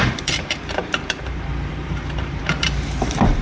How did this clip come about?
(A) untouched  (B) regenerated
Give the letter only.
B